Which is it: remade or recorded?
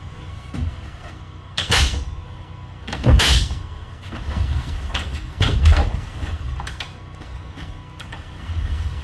remade